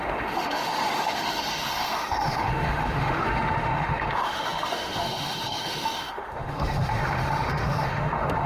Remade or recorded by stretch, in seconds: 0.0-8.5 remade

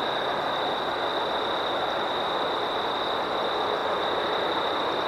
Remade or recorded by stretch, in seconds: 0.0-5.1 recorded

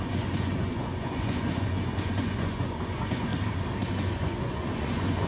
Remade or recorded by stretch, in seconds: 0.0-3.3 remade; 3.3-3.9 recorded; 3.9-5.3 remade